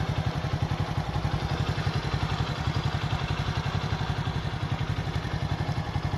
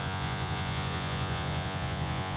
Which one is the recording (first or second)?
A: first